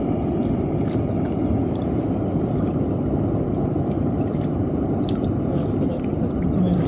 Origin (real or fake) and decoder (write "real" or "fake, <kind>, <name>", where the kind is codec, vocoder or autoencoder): fake, vocoder, BigVGAN v2